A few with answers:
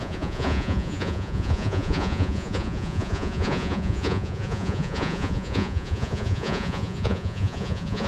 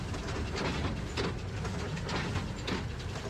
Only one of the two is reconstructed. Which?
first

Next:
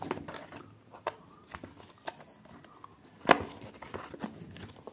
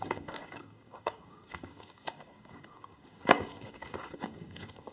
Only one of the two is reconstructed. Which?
second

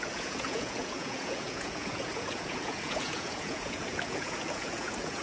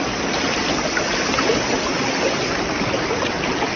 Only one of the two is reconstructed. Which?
first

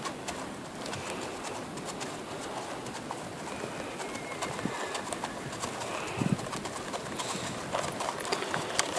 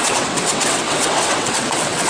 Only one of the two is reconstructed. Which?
second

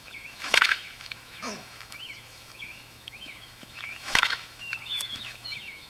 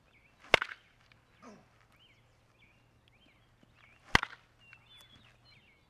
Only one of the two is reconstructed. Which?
first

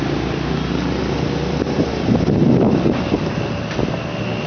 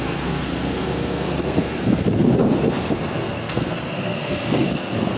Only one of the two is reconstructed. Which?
second